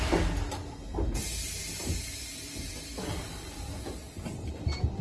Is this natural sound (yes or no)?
yes